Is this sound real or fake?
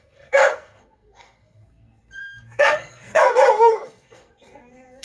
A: fake